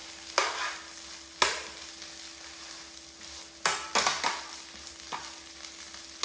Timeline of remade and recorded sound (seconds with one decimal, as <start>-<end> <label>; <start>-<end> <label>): 0.0-6.2 recorded